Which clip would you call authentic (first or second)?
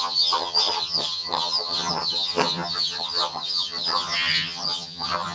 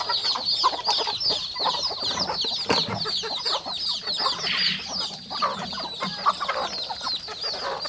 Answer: second